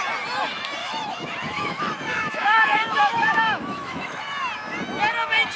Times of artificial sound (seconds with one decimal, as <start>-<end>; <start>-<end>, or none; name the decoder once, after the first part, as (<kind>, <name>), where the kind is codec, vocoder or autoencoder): 0.8-4.2 (autoencoder, DAC-VAE)